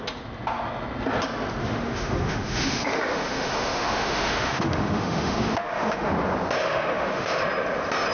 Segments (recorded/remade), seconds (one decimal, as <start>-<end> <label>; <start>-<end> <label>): 0.0-1.6 recorded; 1.6-6.1 remade; 6.1-6.6 recorded; 6.6-7.4 remade; 7.4-8.1 recorded